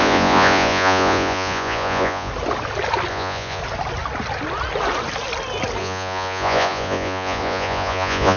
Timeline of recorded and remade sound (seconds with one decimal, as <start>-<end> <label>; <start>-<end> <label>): 0.0-2.3 remade; 2.3-3.1 recorded; 3.1-3.6 remade; 3.6-5.8 recorded; 5.8-8.4 remade